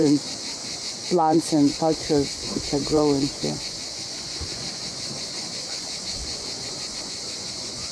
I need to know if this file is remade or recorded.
remade